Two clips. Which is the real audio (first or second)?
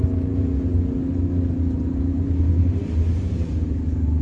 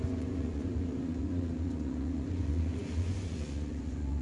first